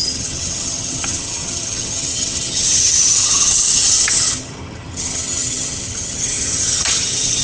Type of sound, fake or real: fake